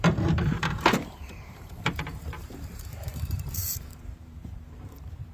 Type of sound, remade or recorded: remade